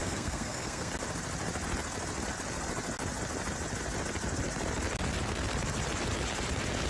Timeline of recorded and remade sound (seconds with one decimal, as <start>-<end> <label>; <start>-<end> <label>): 0.0-0.9 remade; 0.9-6.9 recorded